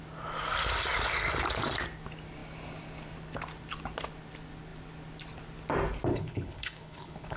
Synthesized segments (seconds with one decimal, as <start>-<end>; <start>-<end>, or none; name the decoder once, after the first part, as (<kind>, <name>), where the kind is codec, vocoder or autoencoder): 6.1-7.4 (codec, HILCodec)